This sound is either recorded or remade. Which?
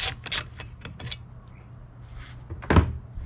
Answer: recorded